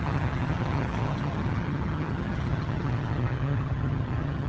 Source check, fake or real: fake